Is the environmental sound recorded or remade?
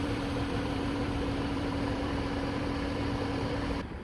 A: remade